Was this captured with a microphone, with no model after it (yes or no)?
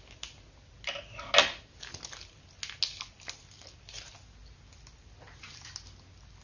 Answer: yes